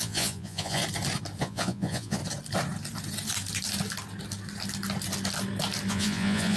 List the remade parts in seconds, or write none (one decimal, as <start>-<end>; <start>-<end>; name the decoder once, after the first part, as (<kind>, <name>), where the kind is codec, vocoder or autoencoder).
0.0-0.8 (vocoder, Vocos); 1.4-2.2; 5.9-6.6